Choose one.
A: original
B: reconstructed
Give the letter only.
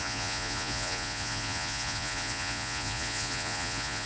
B